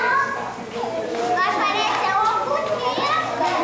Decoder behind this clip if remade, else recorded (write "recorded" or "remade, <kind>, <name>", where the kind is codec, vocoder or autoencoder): recorded